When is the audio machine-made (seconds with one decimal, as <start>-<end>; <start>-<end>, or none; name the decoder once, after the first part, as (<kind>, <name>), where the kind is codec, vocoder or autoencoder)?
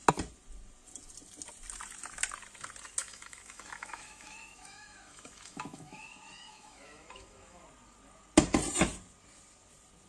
3.0-7.6 (autoencoder, DAC-VAE)